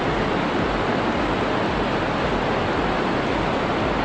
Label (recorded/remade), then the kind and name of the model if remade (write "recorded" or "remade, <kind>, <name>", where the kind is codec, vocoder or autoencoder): recorded